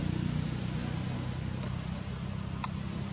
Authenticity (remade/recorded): recorded